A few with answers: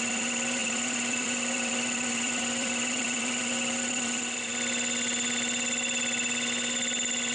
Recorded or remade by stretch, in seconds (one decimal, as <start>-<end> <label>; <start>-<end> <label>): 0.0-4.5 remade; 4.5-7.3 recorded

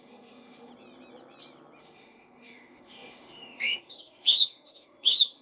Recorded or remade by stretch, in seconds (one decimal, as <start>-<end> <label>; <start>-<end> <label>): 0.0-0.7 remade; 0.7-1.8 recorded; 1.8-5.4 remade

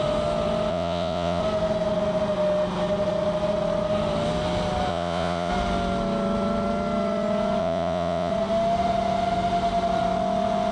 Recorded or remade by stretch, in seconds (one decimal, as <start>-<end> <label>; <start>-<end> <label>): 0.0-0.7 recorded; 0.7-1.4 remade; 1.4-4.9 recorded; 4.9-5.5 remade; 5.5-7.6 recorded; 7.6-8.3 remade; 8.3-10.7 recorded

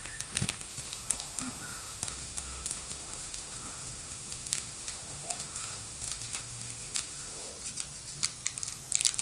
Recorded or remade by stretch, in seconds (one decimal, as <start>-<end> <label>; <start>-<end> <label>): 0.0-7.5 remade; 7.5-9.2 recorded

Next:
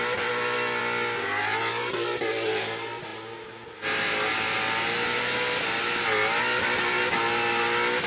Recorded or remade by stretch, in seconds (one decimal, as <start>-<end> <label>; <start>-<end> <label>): 0.0-8.1 recorded

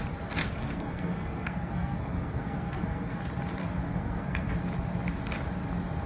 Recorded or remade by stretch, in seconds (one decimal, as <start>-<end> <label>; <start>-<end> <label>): 0.0-0.4 recorded; 0.4-3.2 remade; 3.2-3.6 recorded; 3.6-4.5 remade; 4.5-6.1 recorded

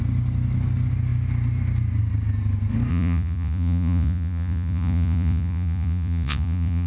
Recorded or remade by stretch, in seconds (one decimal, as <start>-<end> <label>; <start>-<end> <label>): 0.0-2.9 recorded; 2.9-6.9 remade